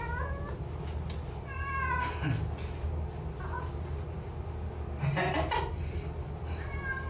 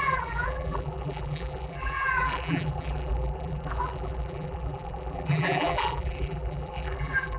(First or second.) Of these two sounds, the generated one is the second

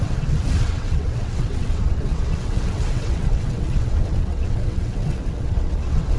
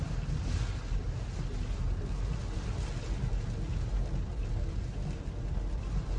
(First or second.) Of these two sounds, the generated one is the first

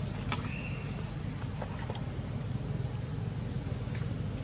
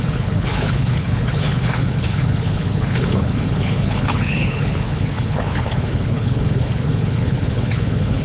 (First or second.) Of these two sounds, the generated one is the second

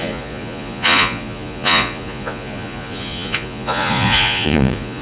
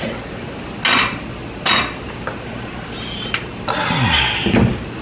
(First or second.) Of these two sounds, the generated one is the first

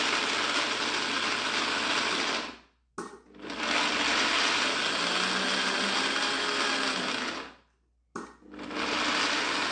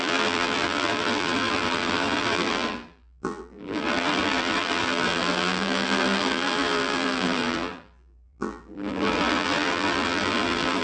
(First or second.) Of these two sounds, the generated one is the second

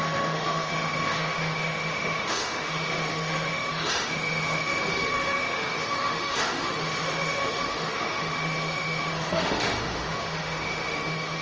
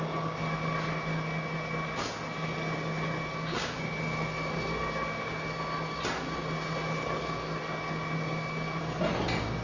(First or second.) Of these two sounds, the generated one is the first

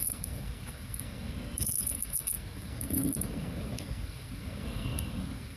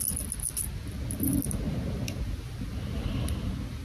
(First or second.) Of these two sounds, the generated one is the first